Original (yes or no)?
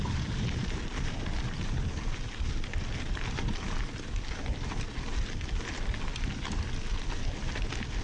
yes